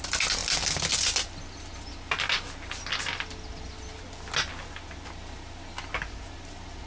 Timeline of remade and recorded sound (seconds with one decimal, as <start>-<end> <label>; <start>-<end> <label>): 0.0-6.9 recorded